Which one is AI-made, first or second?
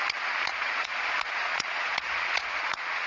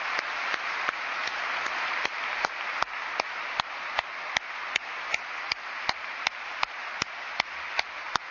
first